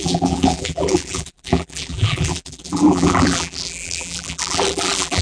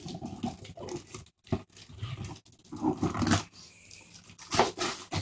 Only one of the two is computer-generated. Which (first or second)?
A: first